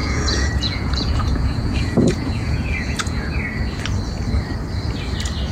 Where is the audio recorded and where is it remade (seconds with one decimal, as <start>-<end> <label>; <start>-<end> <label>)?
0.0-3.3 remade; 3.3-5.5 recorded